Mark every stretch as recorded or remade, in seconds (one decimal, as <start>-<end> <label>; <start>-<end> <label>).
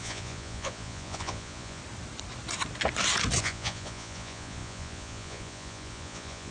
0.0-1.8 remade; 1.8-3.4 recorded; 3.4-6.5 remade